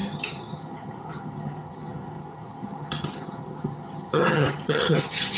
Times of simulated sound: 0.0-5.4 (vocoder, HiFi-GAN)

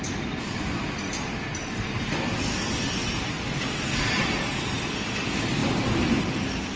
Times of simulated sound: none

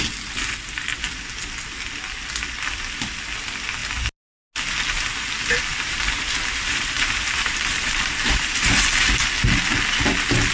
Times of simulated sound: 5.7-9.2 (vocoder, BigVGAN v2)

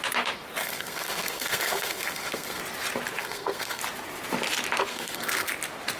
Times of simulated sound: 0.6-2.6 (codec, SNAC); 3.2-3.8; 4.9-5.5

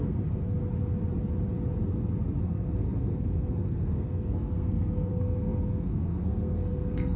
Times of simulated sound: 0.0-0.6 (codec, SNAC); 2.4-7.2

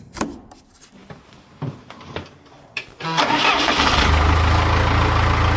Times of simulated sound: 1.0-4.0 (vocoder, BigVGAN v2)

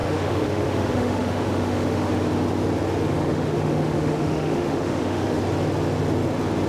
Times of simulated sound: 0.0-2.1 (autoencoder, DAC-VAE); 3.1-5.4

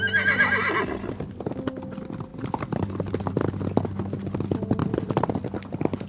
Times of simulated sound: 2.3-3.2 (vocoder, BigVGAN v2); 4.8-5.3